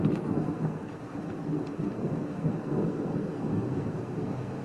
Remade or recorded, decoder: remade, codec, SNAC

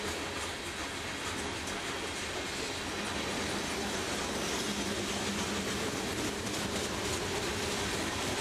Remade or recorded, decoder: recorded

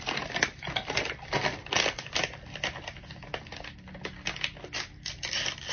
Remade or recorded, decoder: recorded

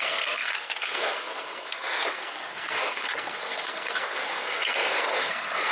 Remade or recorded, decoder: remade, codec, SNAC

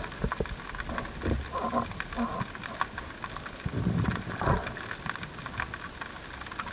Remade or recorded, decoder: recorded